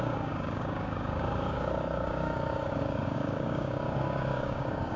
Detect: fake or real fake